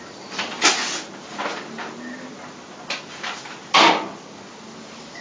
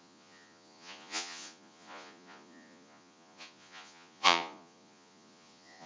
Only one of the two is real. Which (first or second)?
first